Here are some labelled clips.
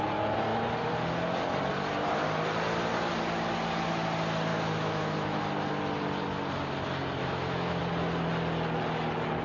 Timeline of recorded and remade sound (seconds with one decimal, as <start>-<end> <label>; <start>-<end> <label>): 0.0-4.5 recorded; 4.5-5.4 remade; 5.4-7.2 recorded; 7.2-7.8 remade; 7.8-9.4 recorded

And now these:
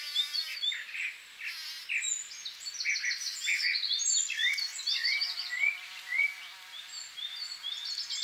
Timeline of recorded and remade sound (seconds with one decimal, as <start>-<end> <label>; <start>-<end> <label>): 0.0-8.2 recorded

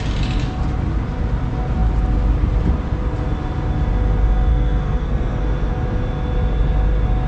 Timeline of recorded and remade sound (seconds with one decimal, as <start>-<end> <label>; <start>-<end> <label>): 0.0-4.5 recorded; 4.5-5.4 remade; 5.4-7.3 recorded